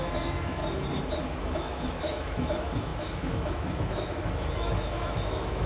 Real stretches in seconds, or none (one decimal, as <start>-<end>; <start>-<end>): 0.6-1.2